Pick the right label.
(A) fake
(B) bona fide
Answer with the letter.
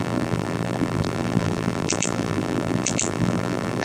A